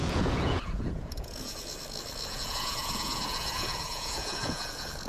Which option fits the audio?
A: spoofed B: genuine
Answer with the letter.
A